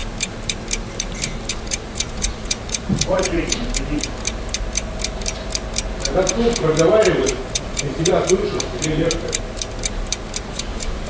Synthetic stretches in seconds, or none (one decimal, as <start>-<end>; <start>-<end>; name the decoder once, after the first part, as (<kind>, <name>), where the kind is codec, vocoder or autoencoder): 1.5-3.6 (vocoder, Vocos); 7.0-8.4; 10.4-11.1